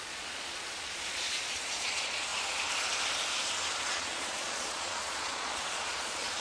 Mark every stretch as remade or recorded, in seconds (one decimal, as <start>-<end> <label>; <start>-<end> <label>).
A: 0.0-2.3 remade; 2.3-3.8 recorded; 3.8-6.4 remade